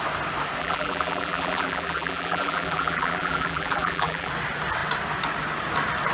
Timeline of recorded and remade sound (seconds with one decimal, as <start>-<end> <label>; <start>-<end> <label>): 0.0-0.6 recorded; 0.6-4.3 remade; 4.3-6.1 recorded